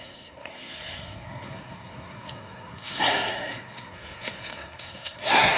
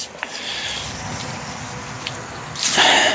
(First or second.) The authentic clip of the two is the second